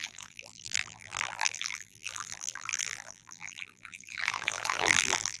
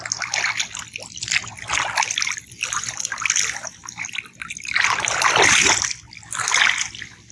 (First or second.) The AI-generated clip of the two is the first